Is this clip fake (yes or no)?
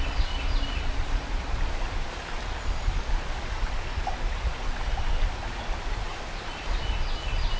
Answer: no